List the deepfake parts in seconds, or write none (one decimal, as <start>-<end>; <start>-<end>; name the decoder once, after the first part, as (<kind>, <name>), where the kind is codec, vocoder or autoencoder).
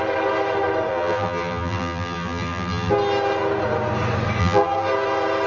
0.9-2.9 (vocoder, BigVGAN v2); 4.4-4.9